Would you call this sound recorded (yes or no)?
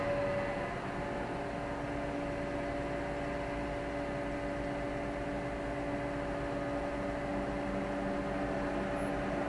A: yes